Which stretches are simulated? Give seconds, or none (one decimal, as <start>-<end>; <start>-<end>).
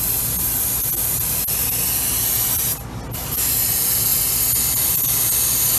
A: none